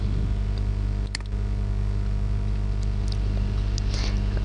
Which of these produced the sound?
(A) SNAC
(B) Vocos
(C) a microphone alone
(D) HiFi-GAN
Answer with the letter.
C